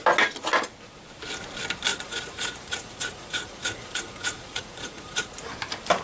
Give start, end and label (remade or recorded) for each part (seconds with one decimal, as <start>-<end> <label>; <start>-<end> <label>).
0.0-1.9 recorded; 1.9-5.5 remade; 5.5-6.0 recorded